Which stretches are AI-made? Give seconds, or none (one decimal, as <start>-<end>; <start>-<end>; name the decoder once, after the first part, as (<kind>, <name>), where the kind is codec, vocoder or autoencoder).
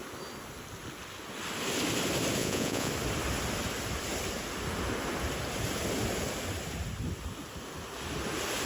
2.4-2.9 (vocoder, Vocos)